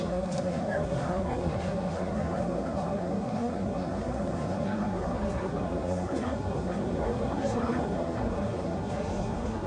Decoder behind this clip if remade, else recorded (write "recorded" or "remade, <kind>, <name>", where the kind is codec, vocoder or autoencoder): remade, codec, SNAC